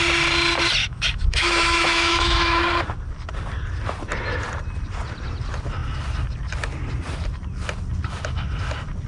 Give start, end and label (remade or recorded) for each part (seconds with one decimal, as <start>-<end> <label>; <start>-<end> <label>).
0.0-0.8 recorded; 0.8-2.6 remade; 2.6-9.1 recorded